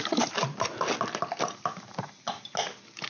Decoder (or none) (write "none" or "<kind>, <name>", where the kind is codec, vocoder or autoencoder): none